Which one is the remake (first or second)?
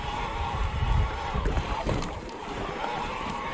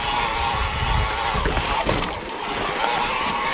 first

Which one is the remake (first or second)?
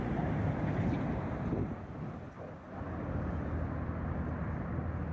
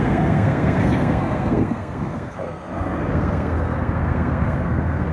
second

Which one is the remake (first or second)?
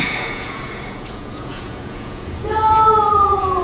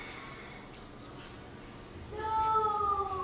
first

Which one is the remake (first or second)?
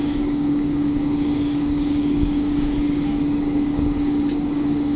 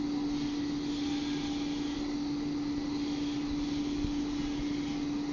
first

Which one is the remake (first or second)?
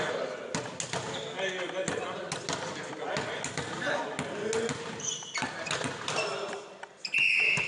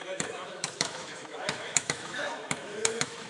second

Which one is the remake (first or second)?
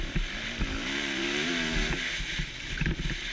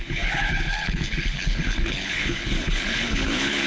second